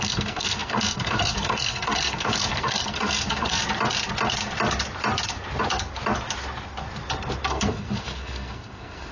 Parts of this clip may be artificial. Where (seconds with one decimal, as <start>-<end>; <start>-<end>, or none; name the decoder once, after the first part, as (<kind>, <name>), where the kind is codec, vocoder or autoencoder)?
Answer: 0.0-3.6 (codec, SNAC); 7.5-9.1